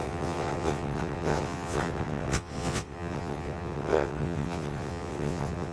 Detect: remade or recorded remade